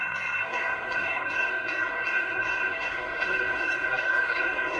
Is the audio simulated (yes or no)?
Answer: yes